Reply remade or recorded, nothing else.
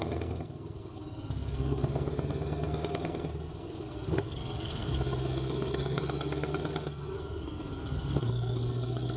remade